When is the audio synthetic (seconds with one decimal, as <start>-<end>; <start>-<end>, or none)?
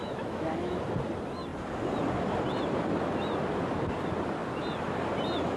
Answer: 0.0-0.8